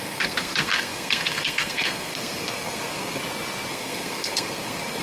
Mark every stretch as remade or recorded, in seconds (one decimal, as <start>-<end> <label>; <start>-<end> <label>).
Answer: 0.0-3.2 remade; 3.2-3.7 recorded; 3.7-5.0 remade